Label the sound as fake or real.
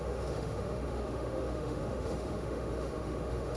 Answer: fake